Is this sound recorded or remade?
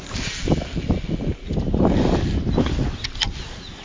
recorded